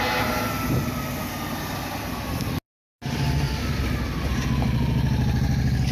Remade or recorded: recorded